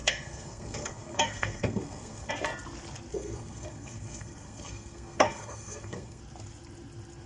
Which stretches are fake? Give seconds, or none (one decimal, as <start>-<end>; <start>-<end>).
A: 0.0-2.3; 3.1-6.2